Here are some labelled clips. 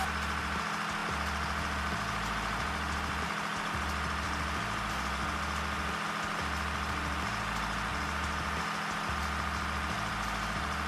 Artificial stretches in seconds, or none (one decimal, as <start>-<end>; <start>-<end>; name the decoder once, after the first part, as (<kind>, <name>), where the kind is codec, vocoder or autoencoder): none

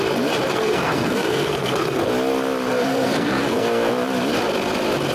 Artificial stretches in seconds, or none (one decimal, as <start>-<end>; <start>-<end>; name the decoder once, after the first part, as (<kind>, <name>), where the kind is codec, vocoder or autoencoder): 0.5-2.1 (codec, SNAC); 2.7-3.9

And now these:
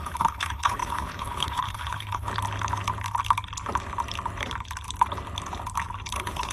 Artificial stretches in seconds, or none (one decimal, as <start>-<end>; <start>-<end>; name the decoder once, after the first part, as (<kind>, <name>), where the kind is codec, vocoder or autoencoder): 0.0-2.3 (codec, HILCodec); 6.1-6.5

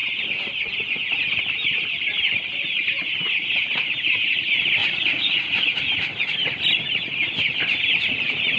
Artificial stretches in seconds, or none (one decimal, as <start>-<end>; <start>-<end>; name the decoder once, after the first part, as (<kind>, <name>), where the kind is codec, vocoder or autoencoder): 4.8-5.8 (vocoder, Vocos)

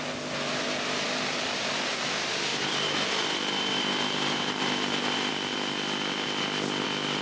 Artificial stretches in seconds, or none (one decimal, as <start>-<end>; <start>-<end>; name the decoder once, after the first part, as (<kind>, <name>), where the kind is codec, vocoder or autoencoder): 2.5-5.3 (vocoder, BigVGAN v2)